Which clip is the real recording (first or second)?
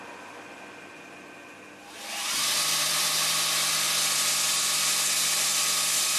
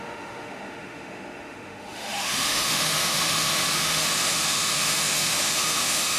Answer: first